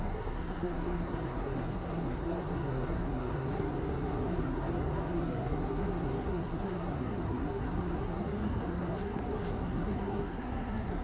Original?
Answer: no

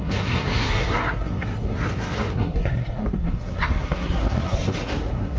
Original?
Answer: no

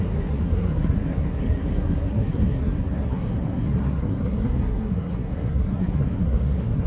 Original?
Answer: no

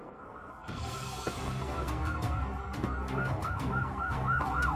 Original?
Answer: no